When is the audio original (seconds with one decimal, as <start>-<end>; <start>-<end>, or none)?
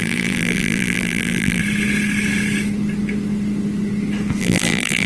1.6-4.4